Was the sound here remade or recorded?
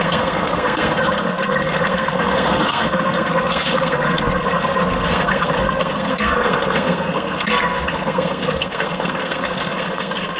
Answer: remade